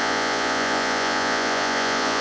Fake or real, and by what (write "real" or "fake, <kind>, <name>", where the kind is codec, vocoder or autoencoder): fake, vocoder, Vocos